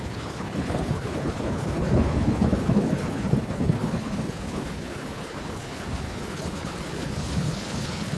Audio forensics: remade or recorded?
remade